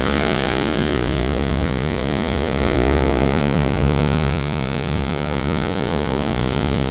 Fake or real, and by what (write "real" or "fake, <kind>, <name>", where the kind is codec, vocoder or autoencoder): fake, vocoder, Vocos